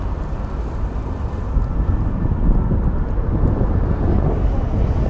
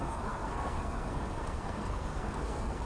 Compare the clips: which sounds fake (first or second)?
second